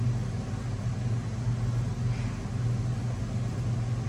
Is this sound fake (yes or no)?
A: no